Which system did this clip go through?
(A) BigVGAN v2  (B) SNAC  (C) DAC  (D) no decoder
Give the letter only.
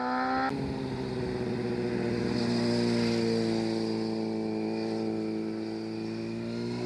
D